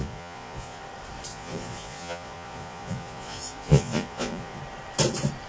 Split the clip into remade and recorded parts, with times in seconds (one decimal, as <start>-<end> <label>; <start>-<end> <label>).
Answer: 0.0-0.8 remade; 0.8-1.3 recorded; 1.3-4.6 remade; 4.6-5.5 recorded